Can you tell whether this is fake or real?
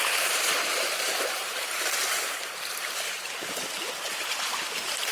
fake